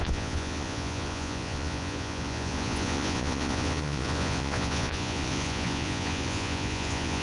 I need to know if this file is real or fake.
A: fake